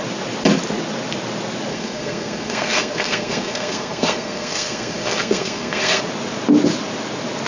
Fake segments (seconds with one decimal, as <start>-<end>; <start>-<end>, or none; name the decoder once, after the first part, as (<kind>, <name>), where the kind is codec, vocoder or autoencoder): 1.7-6.0 (codec, SNAC)